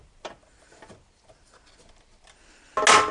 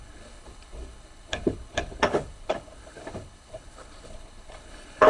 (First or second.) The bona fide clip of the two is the first